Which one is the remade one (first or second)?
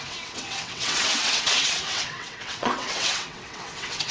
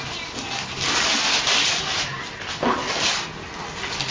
first